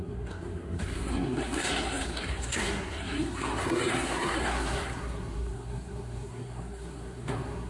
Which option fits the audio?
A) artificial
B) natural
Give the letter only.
A